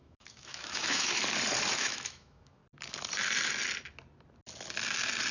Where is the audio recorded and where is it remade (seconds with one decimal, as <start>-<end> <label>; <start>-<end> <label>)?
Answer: 0.0-1.2 remade; 1.2-1.8 recorded; 1.8-2.6 remade; 2.6-5.3 recorded